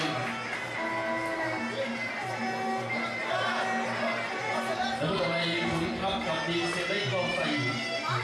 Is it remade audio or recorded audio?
recorded